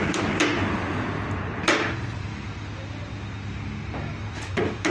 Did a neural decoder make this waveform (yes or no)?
no